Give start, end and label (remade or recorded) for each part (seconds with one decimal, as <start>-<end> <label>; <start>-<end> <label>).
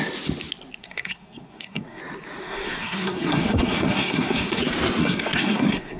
0.0-0.8 recorded; 0.8-2.0 remade; 2.0-2.4 recorded; 2.4-4.6 remade; 4.6-5.0 recorded; 5.0-6.0 remade